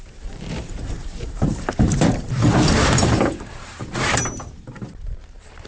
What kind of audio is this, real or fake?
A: fake